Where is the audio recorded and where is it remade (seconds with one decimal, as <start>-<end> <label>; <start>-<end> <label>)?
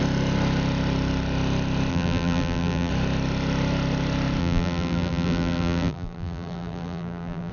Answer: 0.0-1.9 recorded; 1.9-2.9 remade; 2.9-4.4 recorded; 4.4-7.5 remade